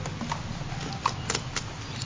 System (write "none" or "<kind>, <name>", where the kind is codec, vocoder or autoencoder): none